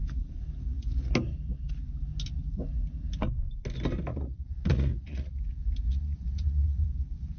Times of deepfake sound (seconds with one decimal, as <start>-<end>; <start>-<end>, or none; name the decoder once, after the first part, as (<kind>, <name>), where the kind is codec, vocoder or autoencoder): 4.1-5.4 (vocoder, Vocos); 5.9-6.9

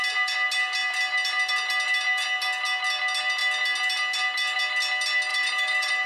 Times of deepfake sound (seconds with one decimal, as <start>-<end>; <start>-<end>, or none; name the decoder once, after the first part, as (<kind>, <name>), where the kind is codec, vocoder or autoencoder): 5.3-6.1 (vocoder, Vocos)

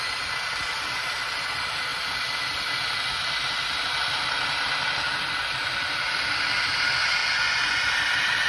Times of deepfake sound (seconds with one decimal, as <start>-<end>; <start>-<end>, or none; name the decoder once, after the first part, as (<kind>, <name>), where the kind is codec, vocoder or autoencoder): 7.2-7.8 (vocoder, Vocos)

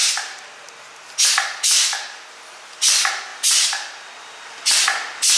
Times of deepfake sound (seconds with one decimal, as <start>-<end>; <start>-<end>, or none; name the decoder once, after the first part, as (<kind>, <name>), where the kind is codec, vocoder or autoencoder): none